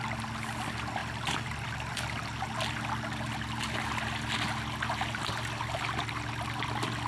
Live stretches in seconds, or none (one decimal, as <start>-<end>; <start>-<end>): 0.0-7.1